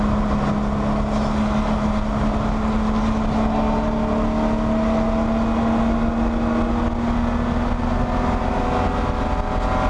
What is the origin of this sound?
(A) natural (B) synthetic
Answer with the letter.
A